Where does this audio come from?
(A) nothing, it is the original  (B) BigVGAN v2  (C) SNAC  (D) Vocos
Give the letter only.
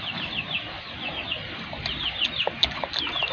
A